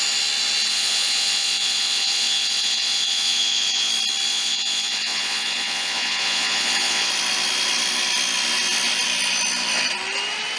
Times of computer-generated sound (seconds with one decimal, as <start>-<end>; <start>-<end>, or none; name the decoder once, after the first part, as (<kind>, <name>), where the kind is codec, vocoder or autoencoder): 0.7-3.9 (vocoder, Vocos); 4.3-7.1